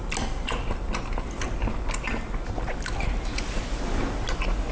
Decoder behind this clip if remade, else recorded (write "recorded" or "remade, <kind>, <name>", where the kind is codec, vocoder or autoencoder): recorded